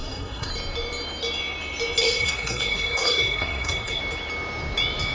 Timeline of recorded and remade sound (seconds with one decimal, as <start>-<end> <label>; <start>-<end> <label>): 0.0-0.5 remade; 0.5-2.0 recorded; 2.0-4.0 remade; 4.0-5.1 recorded